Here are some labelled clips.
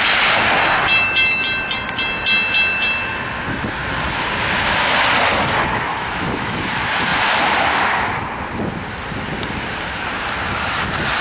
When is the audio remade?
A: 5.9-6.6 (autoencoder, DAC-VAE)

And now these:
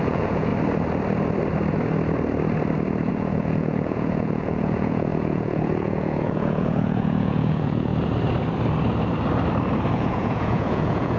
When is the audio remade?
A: 0.0-0.5 (vocoder, Vocos); 3.1-7.9; 9.9-11.2